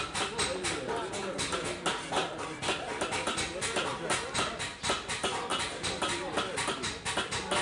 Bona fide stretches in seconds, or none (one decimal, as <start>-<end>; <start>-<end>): 0.0-7.6